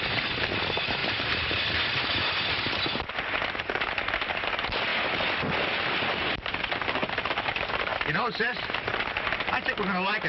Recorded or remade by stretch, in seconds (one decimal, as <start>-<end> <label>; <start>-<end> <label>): 0.0-4.9 remade; 4.9-5.6 recorded; 5.6-7.9 remade; 7.9-8.4 recorded; 8.4-8.9 remade; 8.9-10.3 recorded